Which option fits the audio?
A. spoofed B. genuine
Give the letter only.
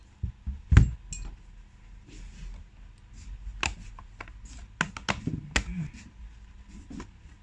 B